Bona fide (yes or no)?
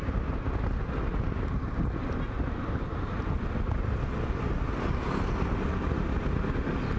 yes